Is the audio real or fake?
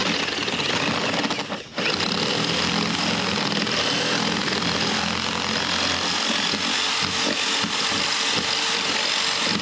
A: real